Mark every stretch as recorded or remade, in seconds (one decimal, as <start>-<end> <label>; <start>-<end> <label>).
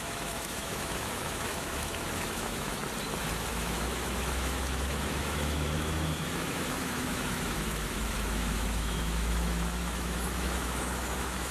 0.0-2.8 remade; 2.8-3.5 recorded; 3.5-11.5 remade